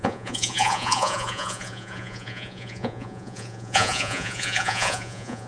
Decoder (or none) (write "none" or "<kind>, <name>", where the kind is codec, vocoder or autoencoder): vocoder, Vocos